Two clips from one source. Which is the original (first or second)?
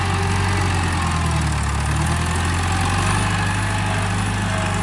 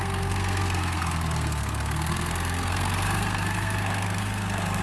first